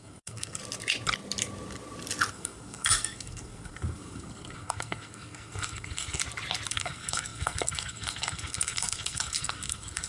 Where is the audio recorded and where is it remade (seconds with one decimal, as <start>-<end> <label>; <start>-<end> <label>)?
0.0-0.6 remade; 0.6-2.3 recorded; 2.3-6.2 remade; 6.2-6.7 recorded; 6.7-10.1 remade